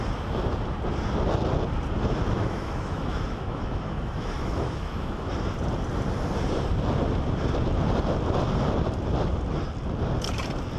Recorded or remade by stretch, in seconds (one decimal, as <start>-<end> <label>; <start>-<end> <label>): 0.0-2.4 recorded; 2.4-5.3 remade; 5.3-10.8 recorded